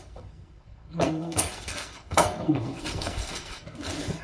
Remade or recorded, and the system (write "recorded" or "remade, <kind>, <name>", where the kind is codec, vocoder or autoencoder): remade, codec, SNAC